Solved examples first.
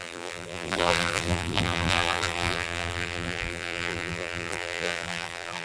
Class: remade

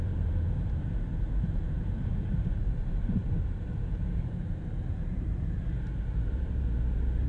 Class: remade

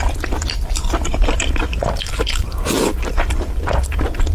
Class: remade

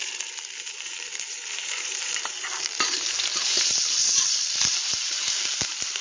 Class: remade